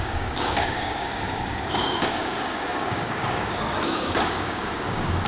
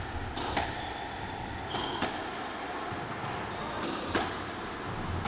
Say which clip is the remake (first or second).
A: first